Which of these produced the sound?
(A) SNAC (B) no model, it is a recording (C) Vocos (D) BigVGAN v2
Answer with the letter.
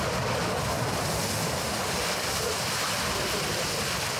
B